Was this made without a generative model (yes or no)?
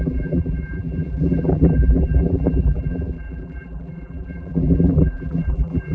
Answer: no